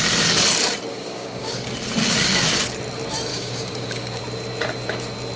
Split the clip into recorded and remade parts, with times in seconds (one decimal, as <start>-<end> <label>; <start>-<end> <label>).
0.0-0.9 recorded; 0.9-1.7 remade; 1.7-3.3 recorded; 3.3-4.2 remade; 4.2-5.4 recorded